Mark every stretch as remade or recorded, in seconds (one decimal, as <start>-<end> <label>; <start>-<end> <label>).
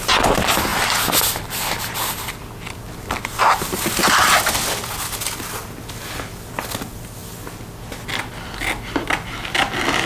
0.0-10.1 recorded